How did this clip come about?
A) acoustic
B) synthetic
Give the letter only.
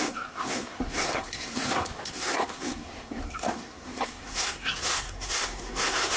B